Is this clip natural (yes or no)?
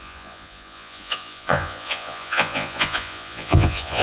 no